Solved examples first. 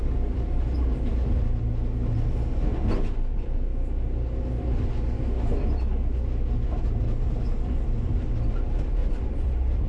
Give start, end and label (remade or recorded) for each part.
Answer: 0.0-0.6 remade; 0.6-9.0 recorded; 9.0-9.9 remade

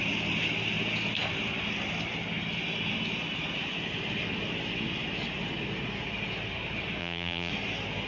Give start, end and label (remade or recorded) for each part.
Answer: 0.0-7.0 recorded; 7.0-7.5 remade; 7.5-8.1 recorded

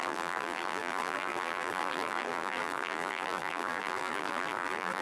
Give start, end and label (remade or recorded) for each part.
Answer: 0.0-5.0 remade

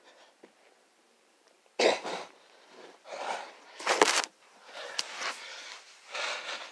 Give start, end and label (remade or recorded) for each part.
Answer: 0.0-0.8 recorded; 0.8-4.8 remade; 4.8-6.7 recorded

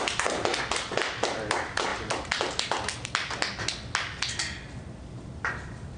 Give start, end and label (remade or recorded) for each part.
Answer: 0.0-0.5 remade; 0.5-1.2 recorded; 1.2-1.9 remade; 1.9-5.5 recorded; 5.5-6.0 remade